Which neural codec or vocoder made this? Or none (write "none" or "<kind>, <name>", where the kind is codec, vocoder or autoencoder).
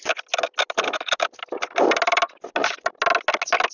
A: none